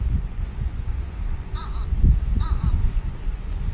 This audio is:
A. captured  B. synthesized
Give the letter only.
B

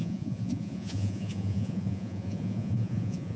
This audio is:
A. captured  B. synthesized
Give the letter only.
B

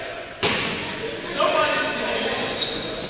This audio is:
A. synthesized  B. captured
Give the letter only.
A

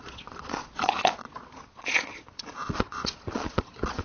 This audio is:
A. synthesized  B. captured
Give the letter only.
A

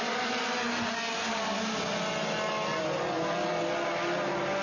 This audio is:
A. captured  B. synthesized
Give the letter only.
A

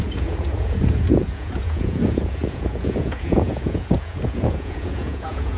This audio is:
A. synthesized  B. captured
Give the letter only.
A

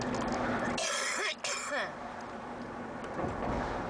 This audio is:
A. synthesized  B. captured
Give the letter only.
B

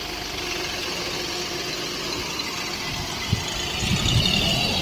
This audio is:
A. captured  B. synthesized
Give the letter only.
A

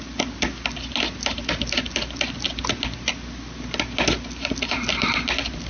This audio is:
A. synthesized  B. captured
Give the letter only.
B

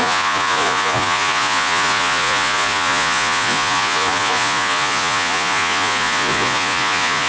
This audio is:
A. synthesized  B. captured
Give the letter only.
A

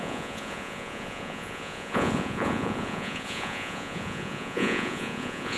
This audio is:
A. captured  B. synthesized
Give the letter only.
B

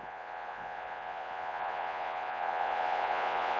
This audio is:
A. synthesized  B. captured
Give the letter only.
A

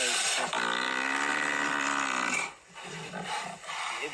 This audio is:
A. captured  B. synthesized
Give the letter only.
A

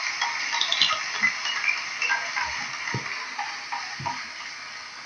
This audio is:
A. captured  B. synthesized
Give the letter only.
A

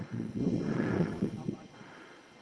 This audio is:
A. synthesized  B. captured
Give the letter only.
A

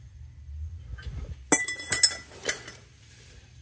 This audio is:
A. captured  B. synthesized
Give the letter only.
A